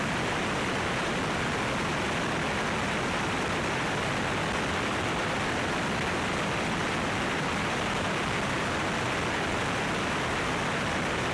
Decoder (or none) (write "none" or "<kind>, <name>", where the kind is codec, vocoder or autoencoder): none